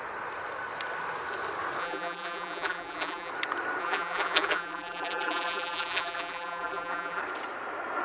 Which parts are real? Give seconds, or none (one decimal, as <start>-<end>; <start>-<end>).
0.0-1.8; 3.3-3.8; 7.2-8.0